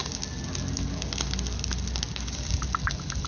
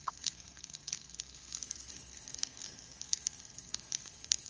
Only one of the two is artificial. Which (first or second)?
second